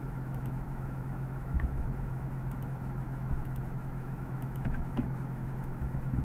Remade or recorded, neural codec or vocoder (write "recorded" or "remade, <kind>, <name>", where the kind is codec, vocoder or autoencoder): remade, autoencoder, DAC-VAE